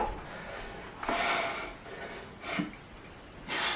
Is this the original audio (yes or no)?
yes